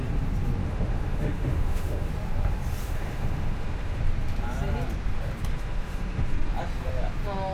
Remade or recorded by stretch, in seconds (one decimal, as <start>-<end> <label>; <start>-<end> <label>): 0.0-0.6 recorded; 0.6-2.1 remade; 2.1-2.8 recorded; 2.8-4.0 remade; 4.0-5.5 recorded; 5.5-6.5 remade; 6.5-7.5 recorded